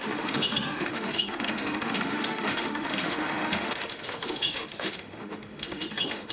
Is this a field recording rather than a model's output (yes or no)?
no